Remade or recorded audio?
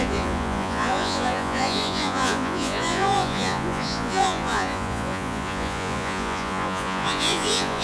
remade